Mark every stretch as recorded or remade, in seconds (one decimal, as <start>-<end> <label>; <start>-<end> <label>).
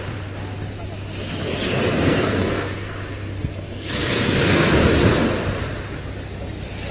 0.0-1.5 recorded; 1.5-4.7 remade; 4.7-6.9 recorded